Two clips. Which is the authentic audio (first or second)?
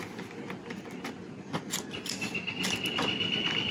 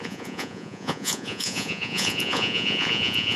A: first